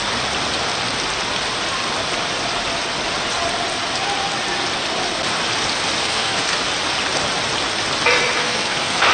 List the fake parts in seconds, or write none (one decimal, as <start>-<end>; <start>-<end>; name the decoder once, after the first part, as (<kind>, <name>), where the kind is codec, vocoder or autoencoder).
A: 6.0-6.6 (codec, SNAC); 8.4-9.1

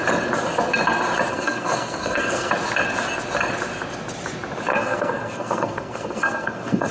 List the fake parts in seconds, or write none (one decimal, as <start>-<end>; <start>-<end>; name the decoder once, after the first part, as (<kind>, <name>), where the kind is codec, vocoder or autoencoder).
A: 1.3-2.5 (codec, SNAC); 4.7-6.9

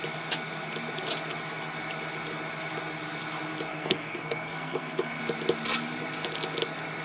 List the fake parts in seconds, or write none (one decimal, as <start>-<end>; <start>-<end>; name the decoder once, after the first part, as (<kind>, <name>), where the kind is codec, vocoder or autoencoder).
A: 3.7-5.2 (codec, SNAC)

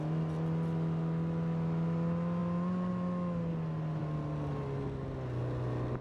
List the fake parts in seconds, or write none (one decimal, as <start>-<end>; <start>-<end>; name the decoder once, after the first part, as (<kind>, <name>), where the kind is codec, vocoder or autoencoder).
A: none